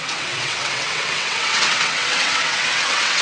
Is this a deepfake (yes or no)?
yes